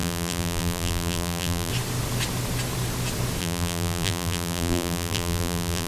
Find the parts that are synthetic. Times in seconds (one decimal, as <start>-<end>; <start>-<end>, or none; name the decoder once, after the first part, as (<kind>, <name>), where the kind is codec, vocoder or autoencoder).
0.0-1.7 (vocoder, BigVGAN v2); 3.4-5.9